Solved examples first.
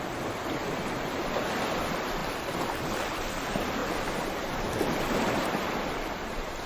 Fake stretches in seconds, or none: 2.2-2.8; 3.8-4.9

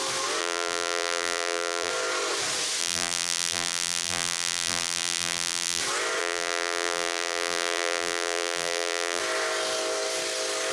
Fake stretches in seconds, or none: 0.4-1.9; 2.8-5.8; 6.2-9.2

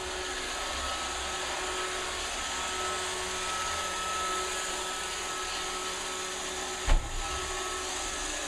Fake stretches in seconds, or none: none

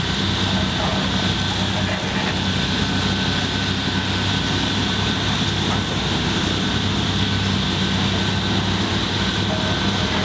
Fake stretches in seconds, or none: none

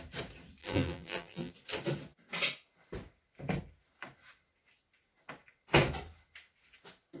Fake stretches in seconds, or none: 0.6-1.5